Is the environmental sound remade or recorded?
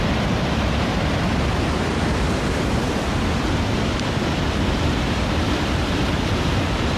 remade